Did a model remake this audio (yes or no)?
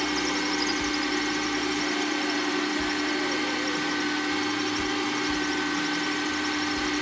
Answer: no